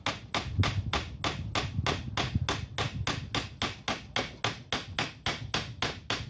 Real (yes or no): yes